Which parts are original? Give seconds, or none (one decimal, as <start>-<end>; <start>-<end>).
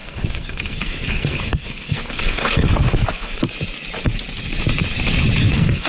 3.4-5.5